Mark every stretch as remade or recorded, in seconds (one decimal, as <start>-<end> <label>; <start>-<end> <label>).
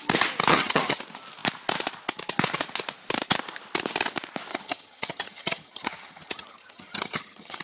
0.0-0.5 recorded; 0.5-1.0 remade; 1.0-4.5 recorded; 4.5-7.6 remade